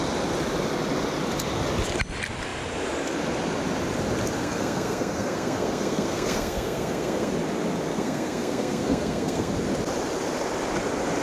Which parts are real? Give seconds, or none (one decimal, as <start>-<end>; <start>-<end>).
0.0-4.4; 7.3-7.9; 9.5-11.2